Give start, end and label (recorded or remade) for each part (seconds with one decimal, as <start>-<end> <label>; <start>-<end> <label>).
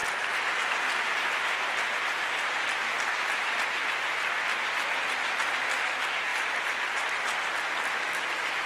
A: 0.0-8.7 recorded